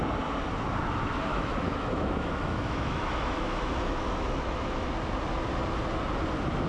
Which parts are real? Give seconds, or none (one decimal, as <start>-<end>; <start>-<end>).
0.0-1.3; 4.9-6.7